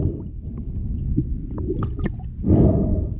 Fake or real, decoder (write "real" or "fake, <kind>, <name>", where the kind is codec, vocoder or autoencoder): real